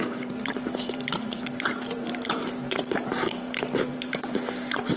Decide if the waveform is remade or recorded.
remade